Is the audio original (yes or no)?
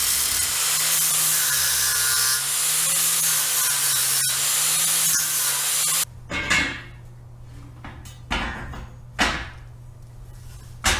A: yes